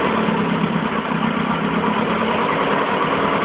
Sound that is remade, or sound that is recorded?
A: recorded